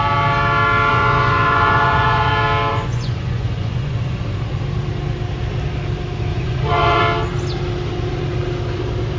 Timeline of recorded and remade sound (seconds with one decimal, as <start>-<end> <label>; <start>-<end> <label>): 0.0-0.9 recorded; 0.9-2.3 remade; 2.3-2.7 recorded; 2.7-4.2 remade; 4.2-6.3 recorded; 6.3-7.0 remade; 7.0-9.2 recorded